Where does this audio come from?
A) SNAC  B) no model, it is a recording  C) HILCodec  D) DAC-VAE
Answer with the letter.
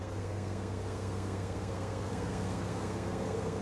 A